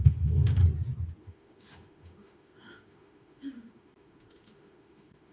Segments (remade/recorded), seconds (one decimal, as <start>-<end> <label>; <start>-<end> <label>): 0.0-0.6 remade; 0.6-1.2 recorded; 1.2-5.3 remade